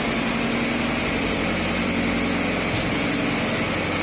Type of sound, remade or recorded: recorded